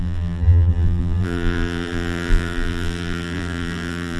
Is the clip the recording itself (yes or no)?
no